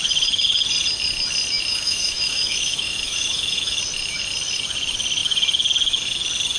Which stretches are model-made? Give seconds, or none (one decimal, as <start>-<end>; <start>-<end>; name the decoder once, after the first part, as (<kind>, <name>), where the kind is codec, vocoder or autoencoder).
1.7-3.8 (autoencoder, DAC-VAE)